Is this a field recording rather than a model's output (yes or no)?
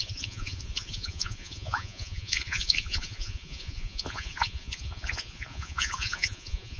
no